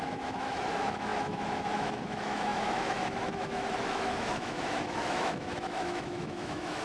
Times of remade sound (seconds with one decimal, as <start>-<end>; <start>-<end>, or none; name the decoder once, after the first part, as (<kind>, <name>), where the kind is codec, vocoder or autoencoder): 0.0-6.8 (autoencoder, DAC-VAE)